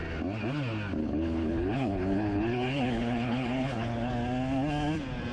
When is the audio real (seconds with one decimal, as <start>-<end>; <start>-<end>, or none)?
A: 0.0-1.0; 4.1-5.3